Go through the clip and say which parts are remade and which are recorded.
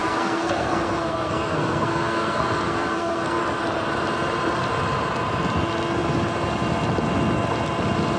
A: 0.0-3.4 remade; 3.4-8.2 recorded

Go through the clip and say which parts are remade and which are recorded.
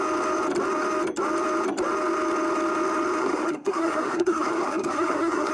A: 0.0-3.2 recorded; 3.2-5.5 remade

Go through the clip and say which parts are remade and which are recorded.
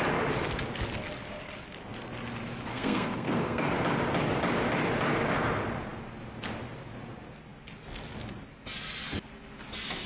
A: 0.0-2.7 recorded; 2.7-3.7 remade; 3.7-10.1 recorded